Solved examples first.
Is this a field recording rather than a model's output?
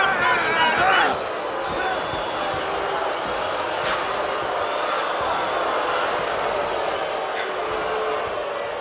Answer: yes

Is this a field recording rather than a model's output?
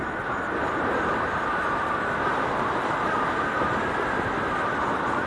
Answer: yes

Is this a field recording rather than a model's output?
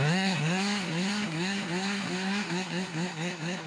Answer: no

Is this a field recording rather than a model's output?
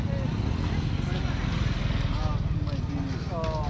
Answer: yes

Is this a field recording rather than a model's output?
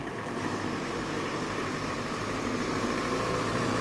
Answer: no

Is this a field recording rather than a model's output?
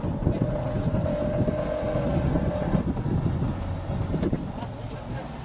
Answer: yes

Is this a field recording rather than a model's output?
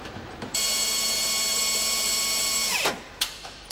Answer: no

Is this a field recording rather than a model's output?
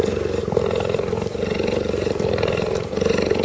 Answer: yes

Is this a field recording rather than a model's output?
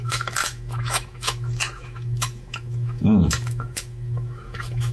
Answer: no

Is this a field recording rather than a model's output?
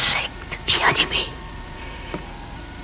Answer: no